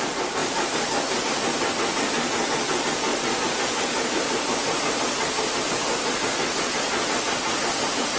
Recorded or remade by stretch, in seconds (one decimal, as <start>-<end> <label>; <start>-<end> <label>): 0.0-0.4 recorded; 0.4-1.2 remade; 1.2-3.1 recorded; 3.1-5.7 remade; 5.7-8.2 recorded